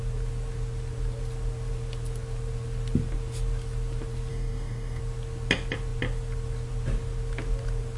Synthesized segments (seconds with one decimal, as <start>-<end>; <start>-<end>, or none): 4.3-5.0